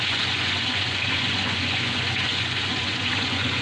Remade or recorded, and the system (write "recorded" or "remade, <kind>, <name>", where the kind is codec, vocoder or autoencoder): remade, vocoder, Vocos